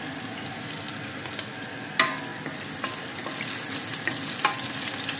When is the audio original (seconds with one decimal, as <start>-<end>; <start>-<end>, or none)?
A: 0.0-5.2